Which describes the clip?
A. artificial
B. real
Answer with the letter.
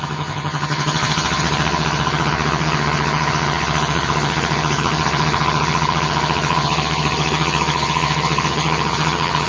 A